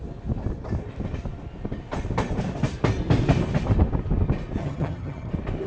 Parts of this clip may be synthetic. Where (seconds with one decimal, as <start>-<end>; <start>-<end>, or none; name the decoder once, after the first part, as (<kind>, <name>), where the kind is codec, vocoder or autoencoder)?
4.6-5.3 (vocoder, HiFi-GAN)